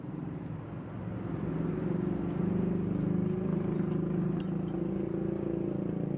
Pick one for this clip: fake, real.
real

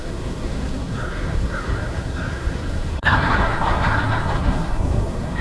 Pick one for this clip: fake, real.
fake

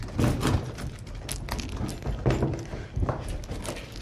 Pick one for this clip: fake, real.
real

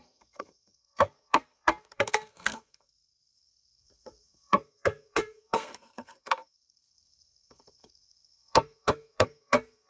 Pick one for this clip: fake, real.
fake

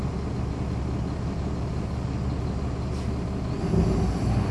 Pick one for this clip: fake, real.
real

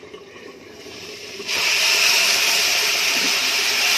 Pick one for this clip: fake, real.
fake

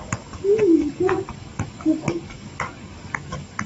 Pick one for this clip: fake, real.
fake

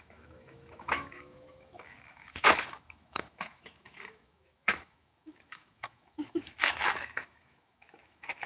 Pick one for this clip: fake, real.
fake